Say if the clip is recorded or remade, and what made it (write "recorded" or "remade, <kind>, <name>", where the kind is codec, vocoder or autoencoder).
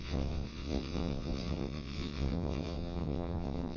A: remade, vocoder, WaveNeXt